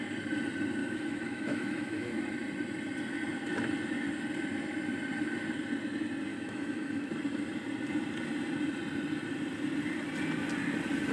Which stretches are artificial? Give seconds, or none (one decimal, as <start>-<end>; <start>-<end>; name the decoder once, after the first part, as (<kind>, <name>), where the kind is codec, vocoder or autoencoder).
0.8-2.2 (autoencoder, DAC-VAE); 6.3-7.1